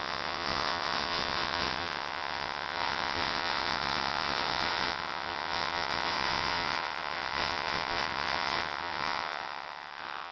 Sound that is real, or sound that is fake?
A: fake